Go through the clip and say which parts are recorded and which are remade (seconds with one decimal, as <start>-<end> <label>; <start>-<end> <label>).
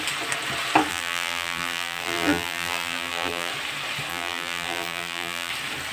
0.0-0.9 recorded; 0.9-3.5 remade; 3.5-4.1 recorded; 4.1-5.5 remade; 5.5-5.9 recorded